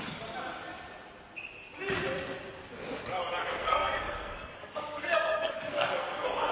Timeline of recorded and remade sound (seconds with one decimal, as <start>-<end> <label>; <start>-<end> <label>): 0.0-3.4 recorded; 3.4-6.5 remade